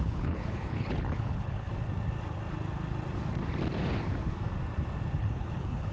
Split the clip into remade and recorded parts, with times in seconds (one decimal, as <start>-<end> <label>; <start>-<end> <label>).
0.0-1.7 remade; 1.7-5.2 recorded; 5.2-5.9 remade